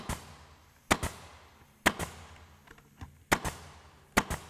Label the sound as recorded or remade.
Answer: recorded